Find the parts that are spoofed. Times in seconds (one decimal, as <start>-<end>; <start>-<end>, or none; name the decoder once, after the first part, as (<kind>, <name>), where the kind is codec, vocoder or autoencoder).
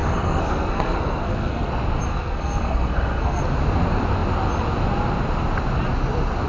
0.0-1.7 (codec, SNAC); 2.1-3.4